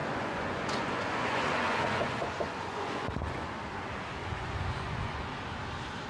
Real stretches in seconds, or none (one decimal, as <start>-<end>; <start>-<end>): 3.5-4.2; 5.3-6.1